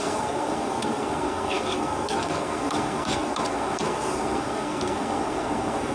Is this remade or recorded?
remade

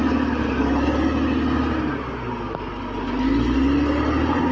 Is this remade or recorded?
recorded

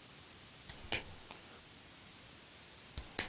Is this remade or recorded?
recorded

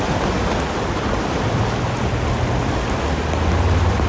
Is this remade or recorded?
recorded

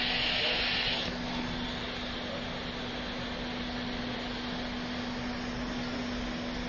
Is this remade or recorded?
recorded